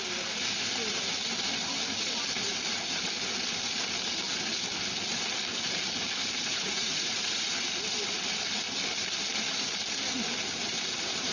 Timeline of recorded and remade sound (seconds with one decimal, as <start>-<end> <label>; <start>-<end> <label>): 0.0-6.5 recorded; 6.5-7.5 remade; 7.5-11.3 recorded